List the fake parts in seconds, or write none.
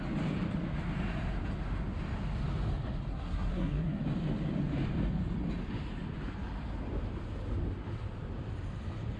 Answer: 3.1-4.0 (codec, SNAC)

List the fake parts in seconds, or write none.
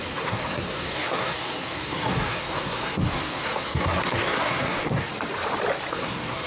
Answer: 0.0-5.1 (codec, SNAC); 5.9-6.5